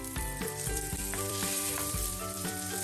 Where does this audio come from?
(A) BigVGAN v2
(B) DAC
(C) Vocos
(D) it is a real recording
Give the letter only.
A